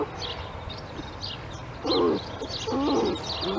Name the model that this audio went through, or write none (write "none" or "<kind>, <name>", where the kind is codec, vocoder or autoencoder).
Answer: none